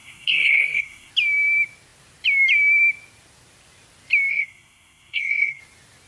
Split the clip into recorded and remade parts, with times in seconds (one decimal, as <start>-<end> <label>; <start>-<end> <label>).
0.0-1.1 remade; 1.1-4.3 recorded; 4.3-5.6 remade; 5.6-6.1 recorded